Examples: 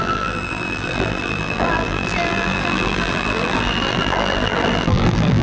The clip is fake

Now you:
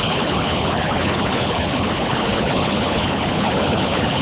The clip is fake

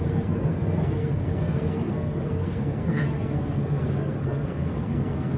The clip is fake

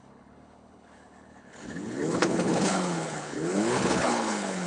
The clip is fake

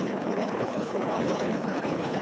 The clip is fake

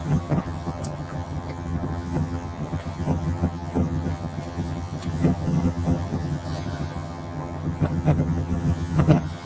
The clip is fake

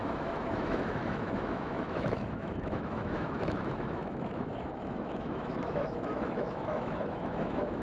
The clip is fake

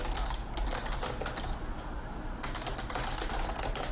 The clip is real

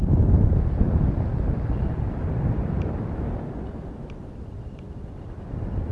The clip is real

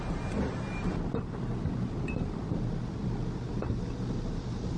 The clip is real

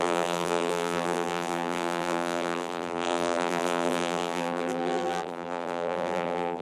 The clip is fake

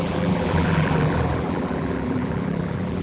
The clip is fake